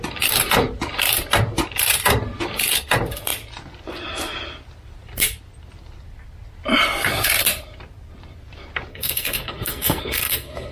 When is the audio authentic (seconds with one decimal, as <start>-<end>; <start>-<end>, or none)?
0.0-8.9